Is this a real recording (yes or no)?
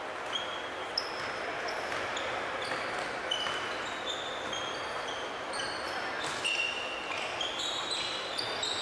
yes